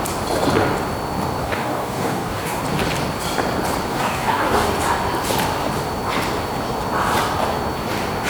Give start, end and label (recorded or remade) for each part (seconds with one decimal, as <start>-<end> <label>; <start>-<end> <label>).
0.0-1.4 recorded; 1.4-2.6 remade; 2.6-3.9 recorded; 3.9-4.7 remade; 4.7-8.3 recorded